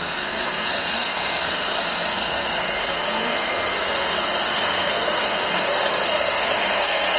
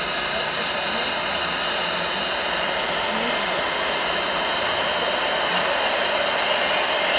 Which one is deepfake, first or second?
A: first